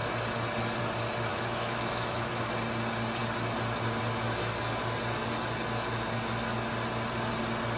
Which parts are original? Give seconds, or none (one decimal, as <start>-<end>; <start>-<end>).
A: 0.0-1.3; 2.5-7.8